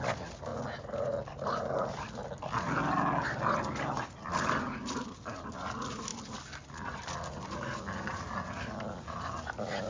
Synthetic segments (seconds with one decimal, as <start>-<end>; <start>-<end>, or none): none